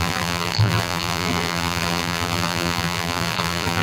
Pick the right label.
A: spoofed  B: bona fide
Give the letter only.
A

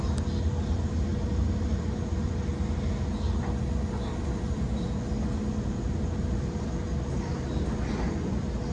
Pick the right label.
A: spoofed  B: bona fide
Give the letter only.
B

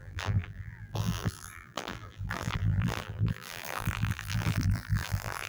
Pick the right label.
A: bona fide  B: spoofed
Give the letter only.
B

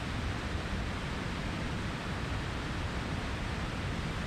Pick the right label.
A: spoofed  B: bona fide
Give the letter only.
A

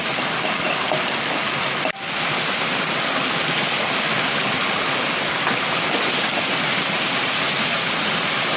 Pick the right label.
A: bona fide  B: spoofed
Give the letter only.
A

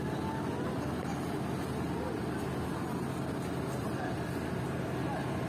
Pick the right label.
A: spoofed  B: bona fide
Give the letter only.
B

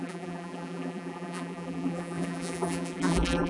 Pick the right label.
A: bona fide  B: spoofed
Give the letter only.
B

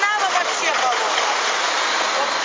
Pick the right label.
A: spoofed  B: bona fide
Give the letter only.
B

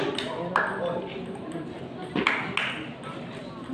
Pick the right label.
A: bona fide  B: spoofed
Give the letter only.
A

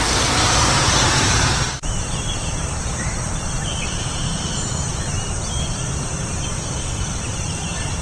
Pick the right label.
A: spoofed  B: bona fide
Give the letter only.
A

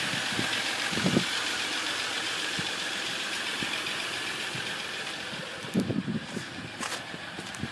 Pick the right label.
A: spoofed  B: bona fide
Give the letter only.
A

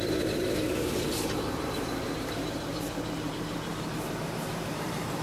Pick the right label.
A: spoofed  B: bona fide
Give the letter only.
A